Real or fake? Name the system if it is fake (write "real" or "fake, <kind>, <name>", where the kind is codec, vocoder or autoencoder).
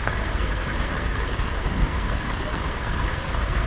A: fake, codec, SNAC